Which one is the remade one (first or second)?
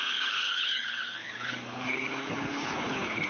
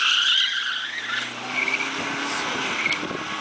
first